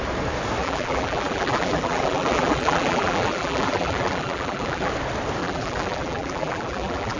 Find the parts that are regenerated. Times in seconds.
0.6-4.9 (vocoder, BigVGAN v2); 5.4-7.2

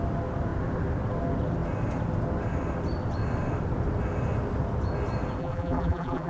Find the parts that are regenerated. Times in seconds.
5.4-6.3 (vocoder, BigVGAN v2)

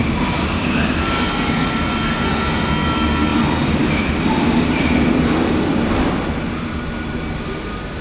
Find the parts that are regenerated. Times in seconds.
3.3-5.7 (vocoder, BigVGAN v2)

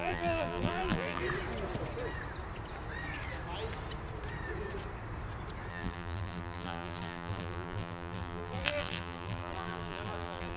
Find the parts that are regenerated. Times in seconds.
0.0-1.2 (vocoder, BigVGAN v2); 5.7-10.6

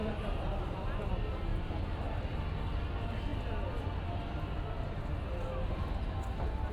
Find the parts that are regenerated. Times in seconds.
0.0-1.1 (vocoder, BigVGAN v2)

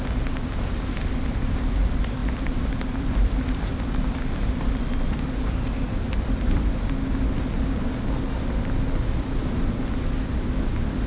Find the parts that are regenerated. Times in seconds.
2.2-6.9 (vocoder, BigVGAN v2)

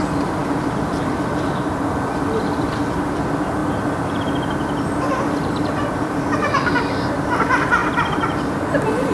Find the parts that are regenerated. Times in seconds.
0.0-0.4 (vocoder, BigVGAN v2); 2.6-3.6; 5.5-9.1

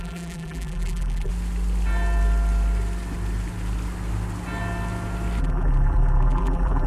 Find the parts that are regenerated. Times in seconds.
0.0-1.3 (vocoder, BigVGAN v2); 5.4-6.9